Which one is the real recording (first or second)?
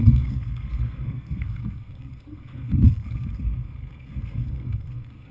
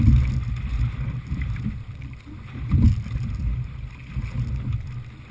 second